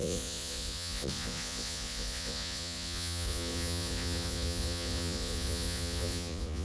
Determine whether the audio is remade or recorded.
remade